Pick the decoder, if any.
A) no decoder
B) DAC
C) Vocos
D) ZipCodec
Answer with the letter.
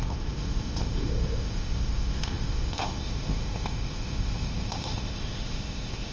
D